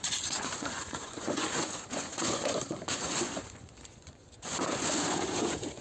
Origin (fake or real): fake